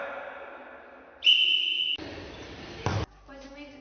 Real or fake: real